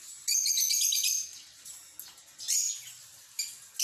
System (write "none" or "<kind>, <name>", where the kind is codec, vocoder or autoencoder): none